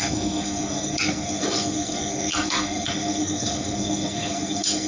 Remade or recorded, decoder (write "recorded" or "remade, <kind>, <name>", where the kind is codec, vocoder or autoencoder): remade, codec, SNAC